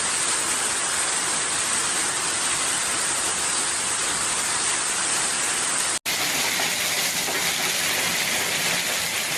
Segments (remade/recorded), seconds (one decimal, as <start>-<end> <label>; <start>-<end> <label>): 0.0-9.4 recorded